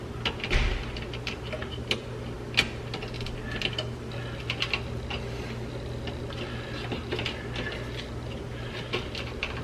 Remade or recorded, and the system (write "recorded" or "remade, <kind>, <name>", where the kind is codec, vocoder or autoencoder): recorded